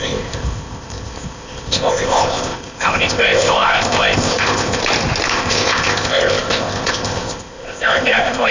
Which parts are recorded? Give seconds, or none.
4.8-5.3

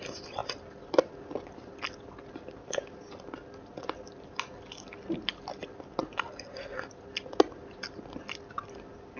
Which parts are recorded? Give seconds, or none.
0.0-9.2

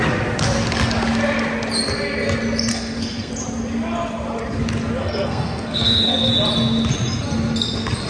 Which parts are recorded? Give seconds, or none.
0.0-2.7; 3.3-5.0; 6.3-8.1

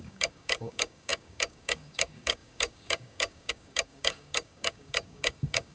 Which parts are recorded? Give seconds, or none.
none

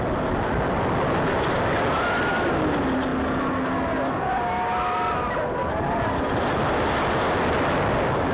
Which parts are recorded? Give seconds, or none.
0.0-8.3

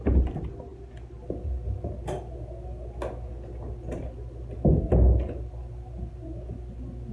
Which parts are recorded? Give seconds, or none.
0.0-7.1